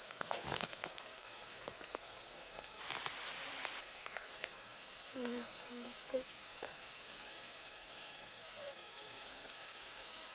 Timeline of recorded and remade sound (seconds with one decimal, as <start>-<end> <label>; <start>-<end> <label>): 0.0-2.8 remade; 2.8-3.8 recorded; 3.8-10.3 remade